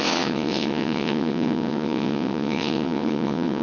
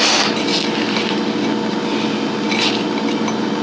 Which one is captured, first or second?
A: second